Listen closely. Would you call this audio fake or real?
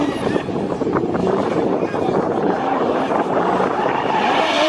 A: fake